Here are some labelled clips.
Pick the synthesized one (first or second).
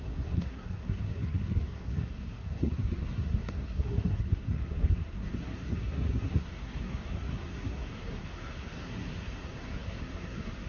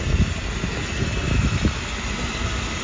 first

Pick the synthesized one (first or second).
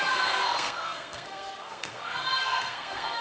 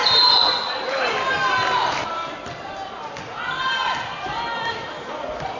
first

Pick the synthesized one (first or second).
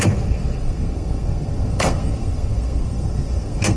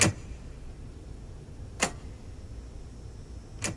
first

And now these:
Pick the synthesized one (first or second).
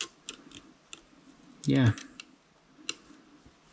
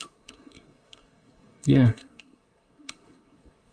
second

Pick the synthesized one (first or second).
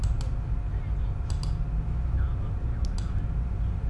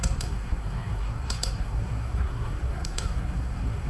second